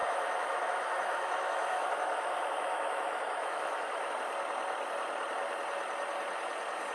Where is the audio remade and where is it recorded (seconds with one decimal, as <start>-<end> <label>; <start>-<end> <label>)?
0.0-4.1 remade; 4.1-6.9 recorded